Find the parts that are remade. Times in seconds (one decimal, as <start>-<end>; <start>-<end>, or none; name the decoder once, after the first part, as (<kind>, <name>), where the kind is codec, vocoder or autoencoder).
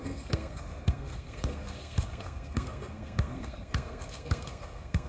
0.0-5.1 (codec, SNAC)